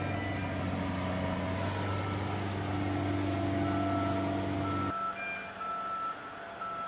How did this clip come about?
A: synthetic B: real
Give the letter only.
B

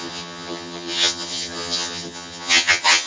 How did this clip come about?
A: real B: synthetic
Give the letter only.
B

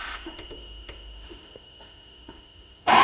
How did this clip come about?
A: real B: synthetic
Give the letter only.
B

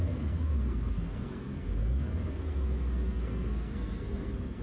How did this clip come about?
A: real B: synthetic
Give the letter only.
B